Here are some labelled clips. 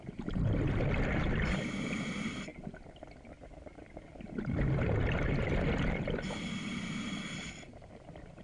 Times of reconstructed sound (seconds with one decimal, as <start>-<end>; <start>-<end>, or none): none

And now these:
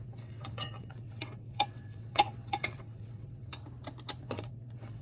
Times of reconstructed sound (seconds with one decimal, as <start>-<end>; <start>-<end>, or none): 0.0-3.5; 4.2-5.0

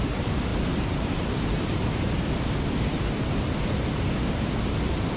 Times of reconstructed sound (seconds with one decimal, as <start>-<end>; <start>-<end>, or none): none

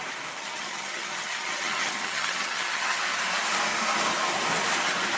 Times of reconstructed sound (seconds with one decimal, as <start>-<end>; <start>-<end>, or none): 0.4-3.0

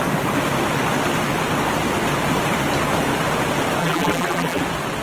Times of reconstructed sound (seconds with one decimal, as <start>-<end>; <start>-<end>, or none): 3.8-4.6

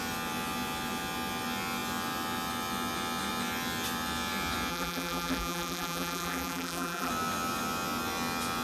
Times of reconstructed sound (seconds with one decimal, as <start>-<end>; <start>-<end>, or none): 4.7-7.1